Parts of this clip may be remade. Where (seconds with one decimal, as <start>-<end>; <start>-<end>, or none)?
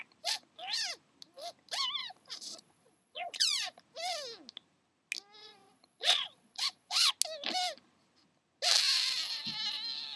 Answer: 2.0-3.8; 5.4-7.1